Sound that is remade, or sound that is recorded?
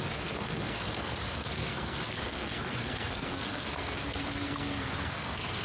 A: remade